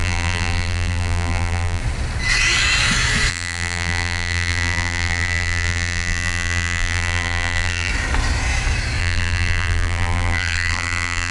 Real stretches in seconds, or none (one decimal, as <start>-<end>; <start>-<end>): 1.8-3.3; 7.9-9.0